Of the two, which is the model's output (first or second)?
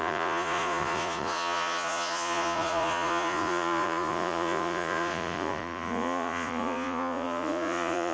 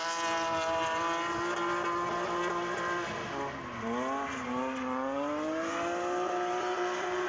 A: first